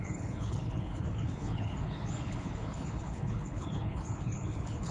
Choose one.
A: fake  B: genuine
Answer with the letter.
A